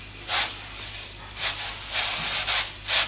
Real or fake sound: real